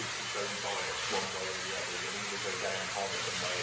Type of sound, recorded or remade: recorded